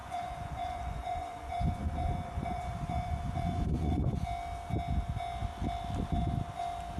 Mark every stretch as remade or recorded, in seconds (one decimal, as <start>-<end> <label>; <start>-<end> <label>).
0.0-4.2 remade; 4.2-7.0 recorded

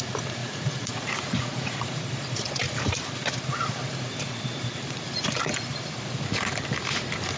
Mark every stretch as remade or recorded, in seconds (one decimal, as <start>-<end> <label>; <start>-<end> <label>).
0.0-0.4 recorded; 0.4-2.0 remade; 2.0-7.4 recorded

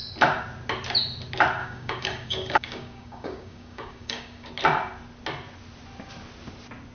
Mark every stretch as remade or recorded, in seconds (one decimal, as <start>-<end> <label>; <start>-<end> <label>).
0.0-1.6 recorded; 1.6-4.5 remade; 4.5-6.9 recorded